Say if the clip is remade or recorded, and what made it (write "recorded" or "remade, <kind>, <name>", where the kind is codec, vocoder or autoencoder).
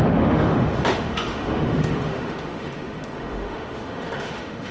remade, autoencoder, DAC-VAE